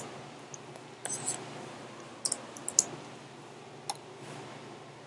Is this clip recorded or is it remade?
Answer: recorded